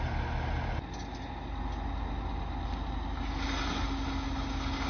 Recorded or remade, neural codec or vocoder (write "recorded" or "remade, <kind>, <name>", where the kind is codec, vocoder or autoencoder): recorded